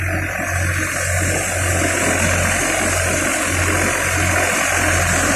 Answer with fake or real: real